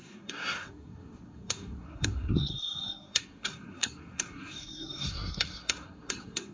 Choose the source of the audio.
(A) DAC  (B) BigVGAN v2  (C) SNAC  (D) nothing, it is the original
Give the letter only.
C